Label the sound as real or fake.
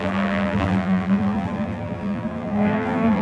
fake